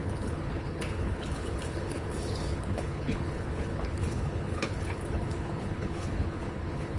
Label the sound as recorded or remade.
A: remade